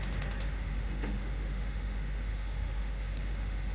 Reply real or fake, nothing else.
fake